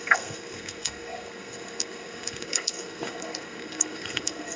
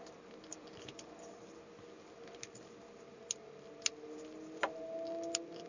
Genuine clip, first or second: second